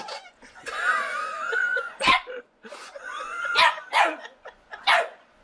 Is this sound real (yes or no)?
no